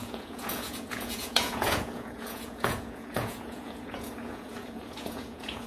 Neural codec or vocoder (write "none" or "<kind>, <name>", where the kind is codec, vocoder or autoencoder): vocoder, Vocos